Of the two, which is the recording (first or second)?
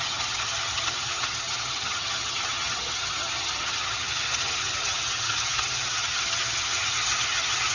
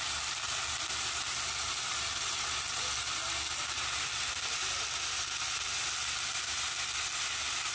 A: second